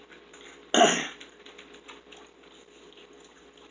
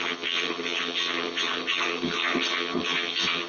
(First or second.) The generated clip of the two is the second